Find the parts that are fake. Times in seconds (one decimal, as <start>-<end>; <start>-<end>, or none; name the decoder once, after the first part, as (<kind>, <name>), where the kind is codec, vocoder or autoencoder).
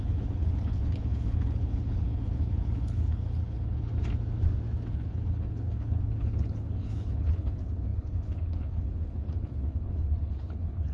0.0-3.9 (codec, HILCodec); 4.9-10.9